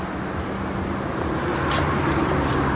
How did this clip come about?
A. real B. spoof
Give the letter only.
A